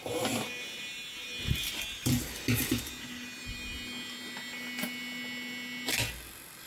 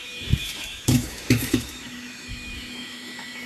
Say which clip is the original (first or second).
first